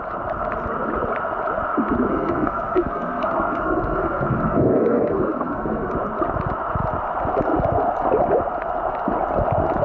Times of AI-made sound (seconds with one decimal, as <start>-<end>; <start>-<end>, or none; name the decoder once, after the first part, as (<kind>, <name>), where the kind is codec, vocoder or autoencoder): 2.1-5.9 (codec, SNAC)